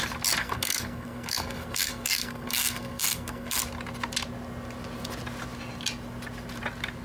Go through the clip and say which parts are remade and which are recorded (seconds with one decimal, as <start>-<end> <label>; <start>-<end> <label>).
0.0-0.4 recorded; 0.4-3.6 remade; 3.6-7.0 recorded